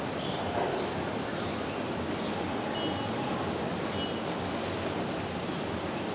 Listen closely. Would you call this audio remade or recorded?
recorded